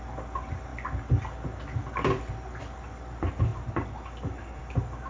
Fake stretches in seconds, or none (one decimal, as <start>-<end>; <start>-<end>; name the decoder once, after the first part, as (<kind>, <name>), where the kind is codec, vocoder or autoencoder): none